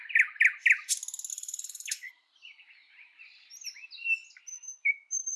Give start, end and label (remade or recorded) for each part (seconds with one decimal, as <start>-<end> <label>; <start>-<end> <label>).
0.0-1.3 recorded; 1.3-2.1 remade; 2.1-5.4 recorded